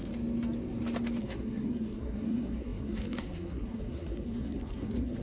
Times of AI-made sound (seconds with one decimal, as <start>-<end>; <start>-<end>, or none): 1.2-5.2